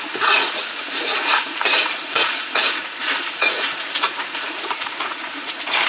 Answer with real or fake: fake